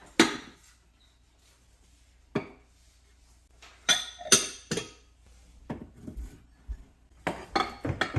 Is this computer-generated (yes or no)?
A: no